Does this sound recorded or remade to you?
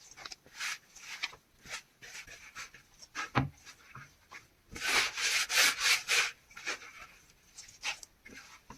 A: recorded